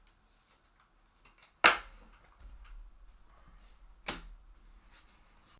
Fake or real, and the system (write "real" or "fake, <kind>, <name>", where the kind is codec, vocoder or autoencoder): real